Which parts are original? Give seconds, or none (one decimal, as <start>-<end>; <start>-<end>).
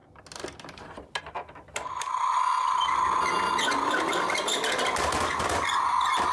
0.0-6.3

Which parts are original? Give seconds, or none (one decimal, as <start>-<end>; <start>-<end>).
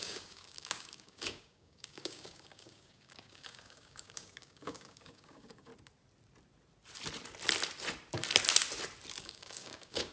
5.7-9.2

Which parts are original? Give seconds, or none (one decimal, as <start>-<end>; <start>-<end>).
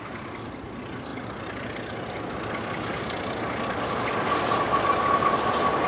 0.0-5.9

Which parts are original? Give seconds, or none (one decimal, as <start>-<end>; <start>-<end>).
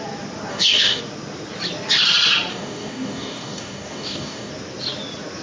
0.0-0.5; 1.0-2.5; 4.5-5.4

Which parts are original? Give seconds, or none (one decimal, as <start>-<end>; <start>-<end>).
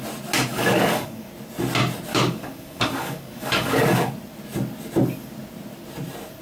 0.0-0.5; 1.3-2.1; 4.1-6.4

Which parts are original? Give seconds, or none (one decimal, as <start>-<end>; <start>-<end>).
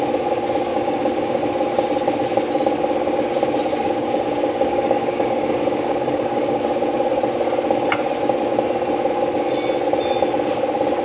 0.0-0.7; 1.4-3.7; 6.6-11.0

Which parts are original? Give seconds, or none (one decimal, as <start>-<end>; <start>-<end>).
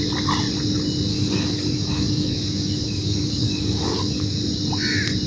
0.0-1.1; 4.3-5.3